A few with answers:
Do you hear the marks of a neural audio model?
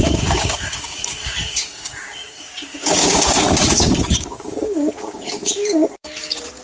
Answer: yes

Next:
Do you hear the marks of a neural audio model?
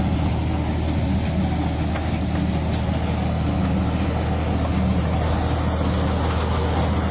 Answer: no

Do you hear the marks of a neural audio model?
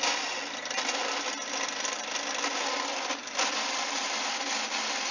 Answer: no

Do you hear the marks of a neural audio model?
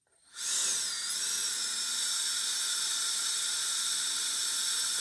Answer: no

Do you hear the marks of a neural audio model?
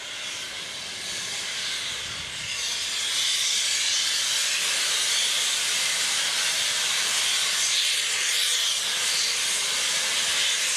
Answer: no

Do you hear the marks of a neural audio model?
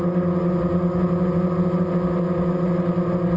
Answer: no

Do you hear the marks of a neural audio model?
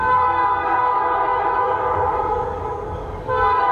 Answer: yes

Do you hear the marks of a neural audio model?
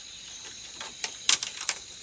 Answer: no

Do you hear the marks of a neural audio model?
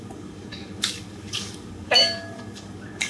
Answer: yes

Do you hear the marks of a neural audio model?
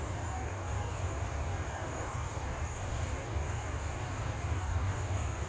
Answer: yes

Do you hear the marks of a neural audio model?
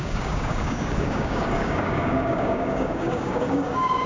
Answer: yes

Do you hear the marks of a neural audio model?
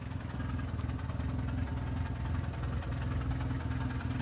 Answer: no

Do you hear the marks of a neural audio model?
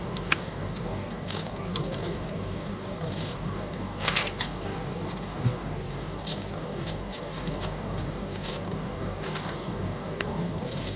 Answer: yes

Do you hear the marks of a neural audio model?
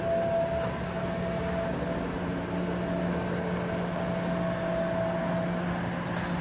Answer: no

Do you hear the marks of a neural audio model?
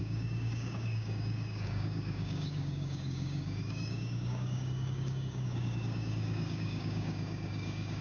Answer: yes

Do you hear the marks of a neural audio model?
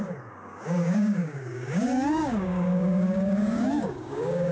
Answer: yes